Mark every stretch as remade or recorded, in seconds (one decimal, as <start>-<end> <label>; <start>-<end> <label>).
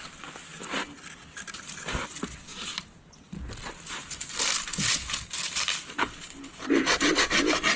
0.0-6.0 recorded; 6.0-6.7 remade; 6.7-7.8 recorded